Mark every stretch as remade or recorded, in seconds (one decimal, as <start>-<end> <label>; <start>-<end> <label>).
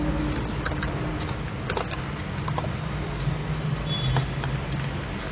0.0-5.3 recorded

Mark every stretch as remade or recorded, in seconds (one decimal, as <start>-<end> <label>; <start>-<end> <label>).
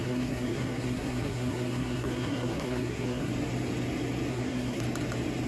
0.0-3.3 remade; 3.3-4.3 recorded; 4.3-4.8 remade; 4.8-5.5 recorded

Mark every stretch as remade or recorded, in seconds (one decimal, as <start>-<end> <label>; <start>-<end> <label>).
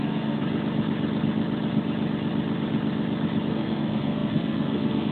0.0-0.4 remade; 0.4-3.5 recorded; 3.5-5.1 remade